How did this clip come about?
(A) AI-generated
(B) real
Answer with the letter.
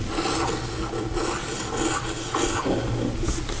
B